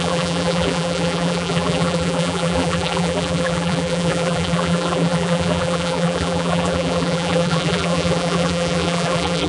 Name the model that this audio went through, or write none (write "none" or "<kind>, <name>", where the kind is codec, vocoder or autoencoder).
vocoder, BigVGAN v2